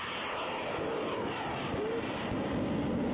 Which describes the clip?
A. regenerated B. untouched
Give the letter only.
B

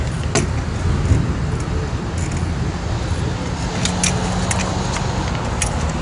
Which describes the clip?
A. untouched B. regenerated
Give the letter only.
A